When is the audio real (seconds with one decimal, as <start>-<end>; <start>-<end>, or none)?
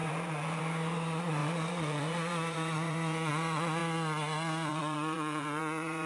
0.0-0.6; 3.8-4.7